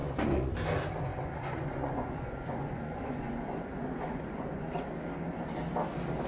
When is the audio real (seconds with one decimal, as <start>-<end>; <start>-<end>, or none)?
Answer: 0.5-1.1; 4.9-6.3